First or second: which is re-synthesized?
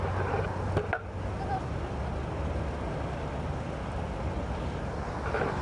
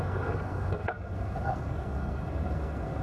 second